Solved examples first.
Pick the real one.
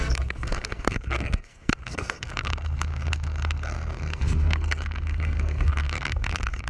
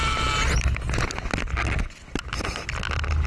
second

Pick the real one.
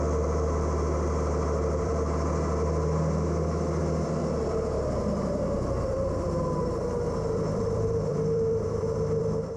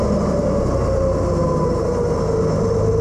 second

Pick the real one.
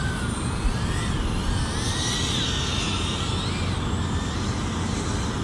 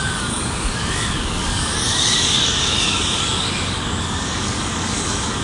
first